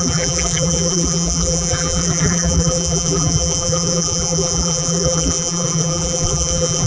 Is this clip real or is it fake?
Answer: fake